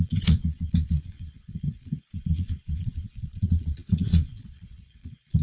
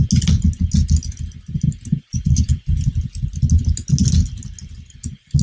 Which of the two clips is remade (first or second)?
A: first